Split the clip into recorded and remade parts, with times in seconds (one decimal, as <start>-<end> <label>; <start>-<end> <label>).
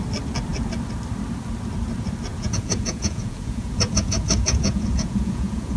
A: 0.0-2.3 recorded; 2.3-5.8 remade